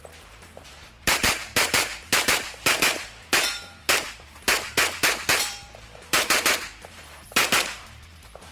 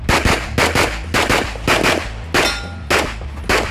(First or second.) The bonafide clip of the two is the second